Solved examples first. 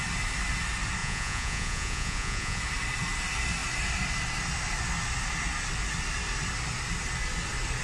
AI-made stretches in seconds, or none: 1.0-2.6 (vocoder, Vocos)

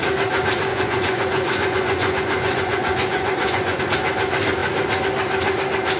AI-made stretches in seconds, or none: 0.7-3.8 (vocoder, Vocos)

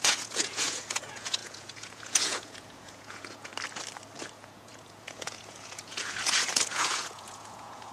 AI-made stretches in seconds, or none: 0.0-3.5 (vocoder, Vocos); 4.3-7.9